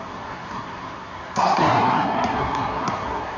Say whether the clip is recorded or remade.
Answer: remade